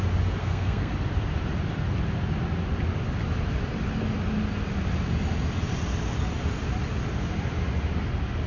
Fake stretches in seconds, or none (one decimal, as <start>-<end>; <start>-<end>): 0.4-0.9